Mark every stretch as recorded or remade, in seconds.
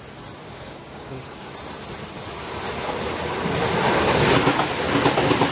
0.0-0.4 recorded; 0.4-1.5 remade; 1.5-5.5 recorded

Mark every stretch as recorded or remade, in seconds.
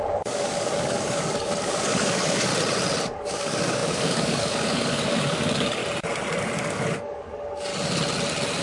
0.0-2.5 remade; 2.5-3.1 recorded; 3.1-5.8 remade; 5.8-6.4 recorded; 6.4-7.7 remade; 7.7-8.6 recorded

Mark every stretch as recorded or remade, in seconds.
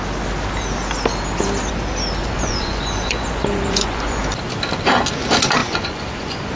0.0-2.2 recorded; 2.2-4.2 remade; 4.2-5.6 recorded; 5.6-6.5 remade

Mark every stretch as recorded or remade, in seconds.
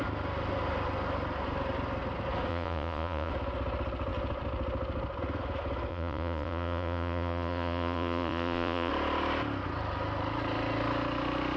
0.0-2.5 recorded; 2.5-3.3 remade; 3.3-5.9 recorded; 5.9-8.9 remade; 8.9-11.6 recorded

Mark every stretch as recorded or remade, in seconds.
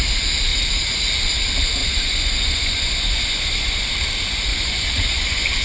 0.0-1.8 recorded; 1.8-3.9 remade; 3.9-4.5 recorded; 4.5-5.6 remade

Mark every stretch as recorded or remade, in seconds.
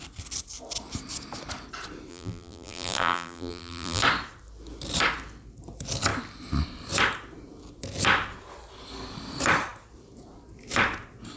0.0-2.1 recorded; 2.1-4.0 remade; 4.0-11.4 recorded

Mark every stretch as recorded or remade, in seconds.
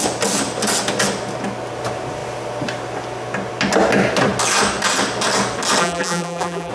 0.0-5.8 recorded; 5.8-6.7 remade